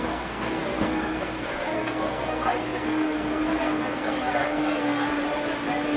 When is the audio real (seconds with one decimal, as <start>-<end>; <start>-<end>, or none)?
5.1-6.0